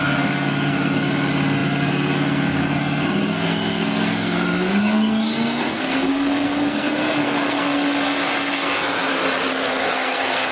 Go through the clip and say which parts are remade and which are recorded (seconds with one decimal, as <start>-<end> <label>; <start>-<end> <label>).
0.0-9.1 remade; 9.1-9.7 recorded; 9.7-10.5 remade